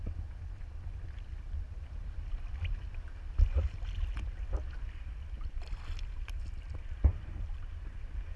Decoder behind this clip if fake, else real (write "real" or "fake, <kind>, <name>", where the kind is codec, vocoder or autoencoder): real